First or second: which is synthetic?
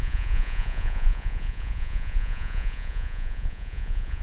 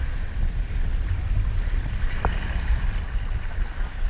first